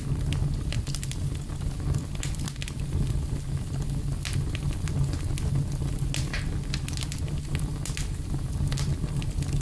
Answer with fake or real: real